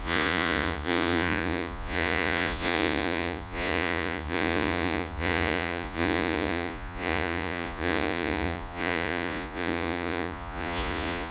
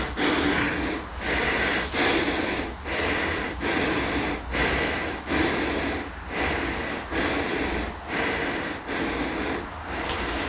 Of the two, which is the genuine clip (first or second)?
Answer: second